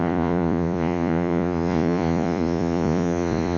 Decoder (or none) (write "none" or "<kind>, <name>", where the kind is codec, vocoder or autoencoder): vocoder, Vocos